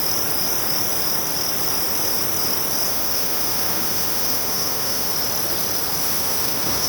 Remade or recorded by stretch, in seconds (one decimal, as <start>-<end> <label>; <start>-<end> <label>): 0.0-2.9 recorded; 2.9-5.1 remade; 5.1-6.0 recorded; 6.0-6.9 remade